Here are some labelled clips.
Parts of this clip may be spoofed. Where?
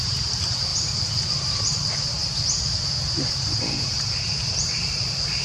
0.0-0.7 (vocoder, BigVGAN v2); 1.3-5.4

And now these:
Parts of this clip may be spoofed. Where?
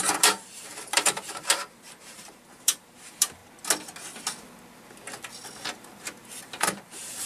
0.0-3.4 (vocoder, BigVGAN v2); 6.4-7.3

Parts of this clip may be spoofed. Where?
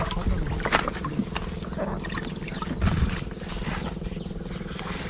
none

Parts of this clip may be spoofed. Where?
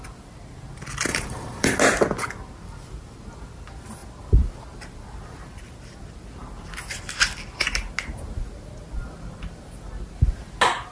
1.1-1.8 (vocoder, BigVGAN v2)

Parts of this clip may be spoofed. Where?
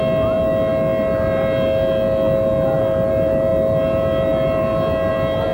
none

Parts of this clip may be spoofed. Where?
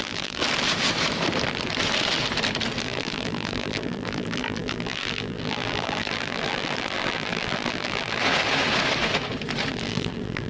0.0-0.4 (vocoder, BigVGAN v2); 2.8-8.2; 9.7-10.5